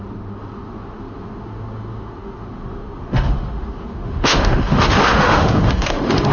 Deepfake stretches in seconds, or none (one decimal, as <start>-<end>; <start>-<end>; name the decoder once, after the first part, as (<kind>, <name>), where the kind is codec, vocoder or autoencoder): 0.0-6.3 (autoencoder, DAC-VAE)